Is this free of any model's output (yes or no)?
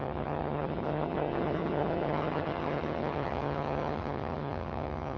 no